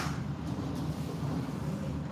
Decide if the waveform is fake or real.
fake